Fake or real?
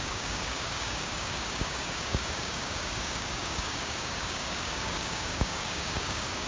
fake